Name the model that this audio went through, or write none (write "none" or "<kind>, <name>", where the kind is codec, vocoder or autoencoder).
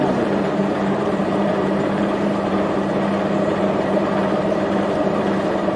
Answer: vocoder, BigVGAN v2